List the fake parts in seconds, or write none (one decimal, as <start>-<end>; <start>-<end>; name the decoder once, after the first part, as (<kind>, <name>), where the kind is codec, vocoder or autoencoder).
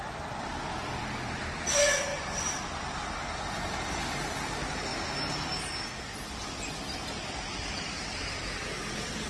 0.0-4.9 (vocoder, BigVGAN v2); 7.3-8.6